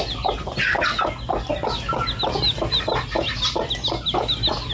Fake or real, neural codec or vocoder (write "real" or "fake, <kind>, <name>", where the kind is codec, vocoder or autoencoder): real